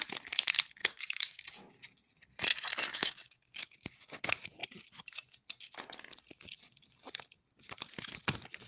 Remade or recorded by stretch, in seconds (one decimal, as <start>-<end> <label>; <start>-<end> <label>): 0.0-0.8 recorded; 0.8-1.7 remade; 1.7-2.9 recorded; 2.9-3.9 remade; 3.9-8.7 recorded